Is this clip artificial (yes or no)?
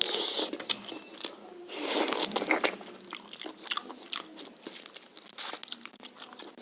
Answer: no